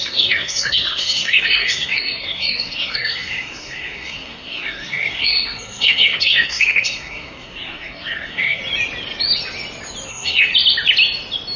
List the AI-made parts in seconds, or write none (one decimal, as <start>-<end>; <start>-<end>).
0.0-8.6; 10.1-10.5